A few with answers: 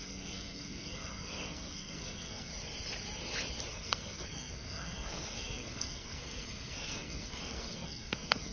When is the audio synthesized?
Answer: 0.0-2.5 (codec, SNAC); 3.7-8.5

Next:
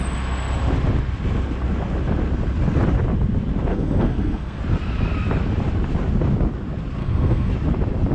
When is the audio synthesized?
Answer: 3.7-4.6 (codec, SNAC); 7.0-7.5